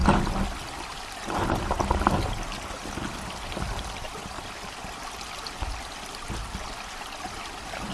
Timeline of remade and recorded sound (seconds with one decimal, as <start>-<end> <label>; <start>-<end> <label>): 0.0-7.9 recorded